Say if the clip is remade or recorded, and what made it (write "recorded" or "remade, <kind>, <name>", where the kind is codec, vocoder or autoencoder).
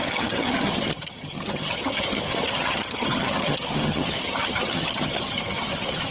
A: remade, vocoder, HiFi-GAN